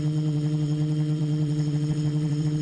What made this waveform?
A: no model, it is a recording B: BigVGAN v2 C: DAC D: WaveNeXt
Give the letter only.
D